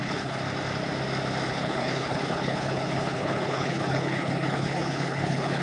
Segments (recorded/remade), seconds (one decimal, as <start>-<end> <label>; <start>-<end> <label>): 0.0-0.4 remade; 0.4-1.5 recorded; 1.5-5.6 remade

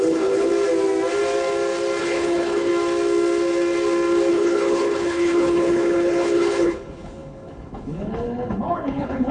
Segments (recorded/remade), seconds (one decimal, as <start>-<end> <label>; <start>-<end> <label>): 0.0-0.5 remade; 0.5-2.0 recorded; 2.0-2.7 remade; 2.7-4.3 recorded; 4.3-9.3 remade

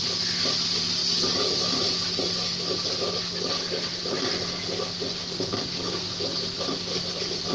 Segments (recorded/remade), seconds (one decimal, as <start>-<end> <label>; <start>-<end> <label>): 0.0-7.5 recorded

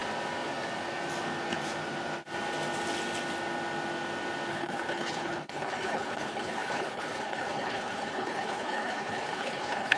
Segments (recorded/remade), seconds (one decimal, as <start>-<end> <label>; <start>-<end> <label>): 0.0-4.5 recorded; 4.5-10.0 remade